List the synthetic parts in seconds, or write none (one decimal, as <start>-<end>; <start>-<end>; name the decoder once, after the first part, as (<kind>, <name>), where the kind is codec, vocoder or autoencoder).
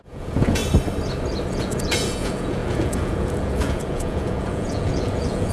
0.0-0.6 (vocoder, Vocos); 1.5-5.5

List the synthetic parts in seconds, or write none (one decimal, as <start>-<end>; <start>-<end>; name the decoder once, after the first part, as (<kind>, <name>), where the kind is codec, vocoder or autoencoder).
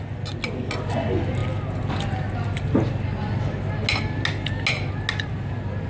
none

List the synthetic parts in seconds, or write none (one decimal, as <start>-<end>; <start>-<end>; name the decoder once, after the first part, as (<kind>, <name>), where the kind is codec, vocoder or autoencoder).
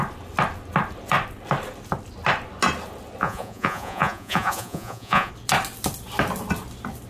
3.2-5.3 (vocoder, Vocos)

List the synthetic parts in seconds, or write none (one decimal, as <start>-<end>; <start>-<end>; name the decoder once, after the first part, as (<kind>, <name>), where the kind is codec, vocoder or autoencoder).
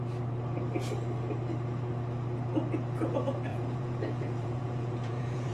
3.5-5.5 (vocoder, Vocos)